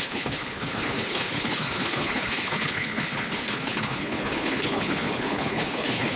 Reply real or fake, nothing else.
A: fake